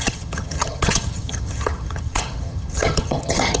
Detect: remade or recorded remade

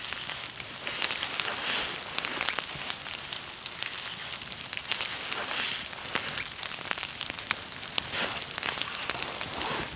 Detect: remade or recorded recorded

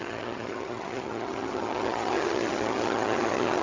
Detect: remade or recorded remade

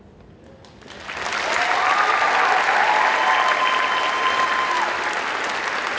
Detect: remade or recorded recorded